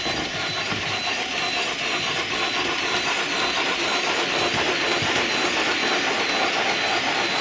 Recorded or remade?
recorded